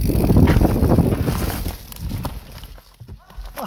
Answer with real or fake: real